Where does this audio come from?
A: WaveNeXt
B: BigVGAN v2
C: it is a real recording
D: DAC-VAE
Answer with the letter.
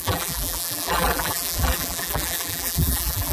B